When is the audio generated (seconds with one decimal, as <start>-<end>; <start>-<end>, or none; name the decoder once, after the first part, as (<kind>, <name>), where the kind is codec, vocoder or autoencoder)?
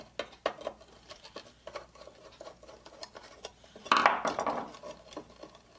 3.0-3.9 (vocoder, BigVGAN v2)